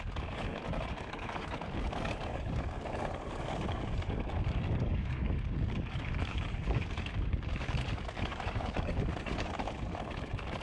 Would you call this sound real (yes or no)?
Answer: no